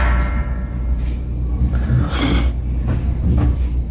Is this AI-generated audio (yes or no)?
no